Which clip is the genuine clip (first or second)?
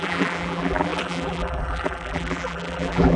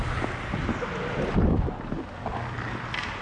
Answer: second